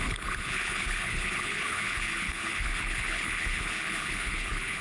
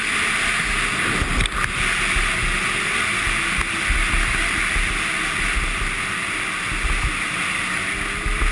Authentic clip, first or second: second